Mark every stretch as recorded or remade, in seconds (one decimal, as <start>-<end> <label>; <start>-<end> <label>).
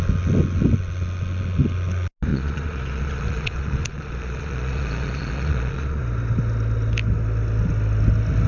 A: 0.0-2.3 recorded; 2.3-6.0 remade; 6.0-8.5 recorded